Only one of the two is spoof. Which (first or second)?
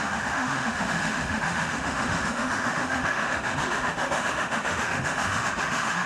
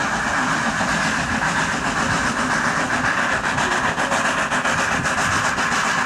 first